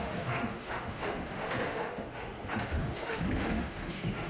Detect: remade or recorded remade